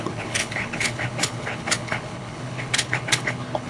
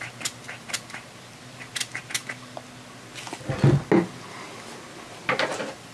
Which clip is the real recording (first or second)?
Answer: second